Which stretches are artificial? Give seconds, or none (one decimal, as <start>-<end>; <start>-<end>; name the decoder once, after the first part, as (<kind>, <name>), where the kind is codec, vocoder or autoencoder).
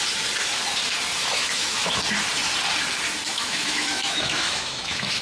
1.2-1.9 (autoencoder, DAC-VAE); 3.3-5.2